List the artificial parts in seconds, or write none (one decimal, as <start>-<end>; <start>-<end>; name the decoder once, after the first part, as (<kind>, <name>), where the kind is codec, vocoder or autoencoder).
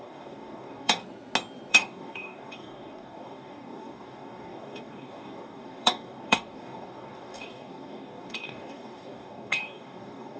0.0-1.0 (codec, DAC); 1.7-10.4